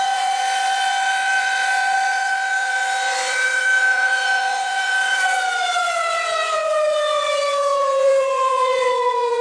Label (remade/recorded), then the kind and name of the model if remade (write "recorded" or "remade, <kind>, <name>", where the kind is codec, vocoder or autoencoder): remade, vocoder, Vocos